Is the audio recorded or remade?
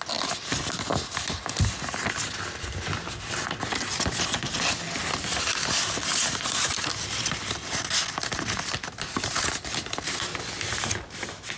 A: recorded